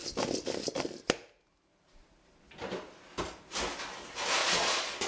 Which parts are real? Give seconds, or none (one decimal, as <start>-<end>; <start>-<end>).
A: 0.0-4.4